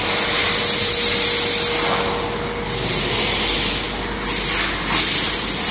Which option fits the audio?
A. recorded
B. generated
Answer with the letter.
A